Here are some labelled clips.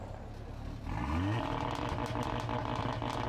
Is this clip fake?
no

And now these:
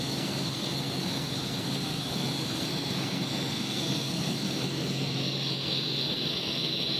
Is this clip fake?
yes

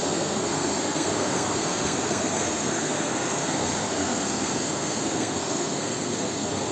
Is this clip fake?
yes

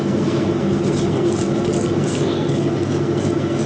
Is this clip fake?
yes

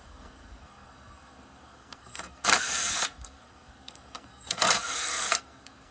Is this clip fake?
yes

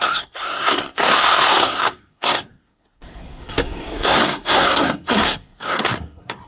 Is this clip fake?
yes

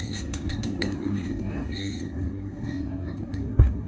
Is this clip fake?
yes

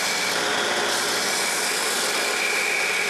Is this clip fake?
no